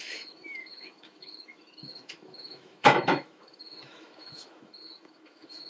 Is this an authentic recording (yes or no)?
no